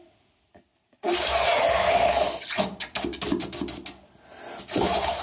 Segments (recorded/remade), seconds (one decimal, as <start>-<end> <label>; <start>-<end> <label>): 0.0-5.2 recorded